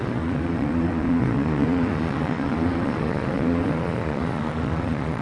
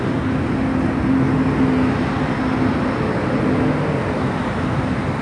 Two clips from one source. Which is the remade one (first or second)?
first